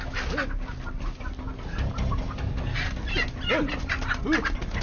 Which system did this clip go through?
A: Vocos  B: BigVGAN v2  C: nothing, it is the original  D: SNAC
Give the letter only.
C